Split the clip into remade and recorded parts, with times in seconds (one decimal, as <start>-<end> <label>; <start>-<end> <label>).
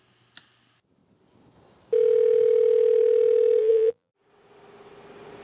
0.0-3.6 recorded; 3.6-4.1 remade; 4.1-5.4 recorded